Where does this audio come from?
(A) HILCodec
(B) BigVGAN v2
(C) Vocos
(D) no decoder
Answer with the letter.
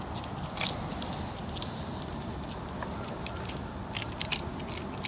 D